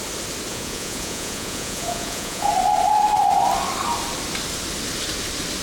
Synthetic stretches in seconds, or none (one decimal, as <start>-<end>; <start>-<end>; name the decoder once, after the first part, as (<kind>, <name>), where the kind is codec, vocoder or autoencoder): 0.5-2.5 (vocoder, Vocos)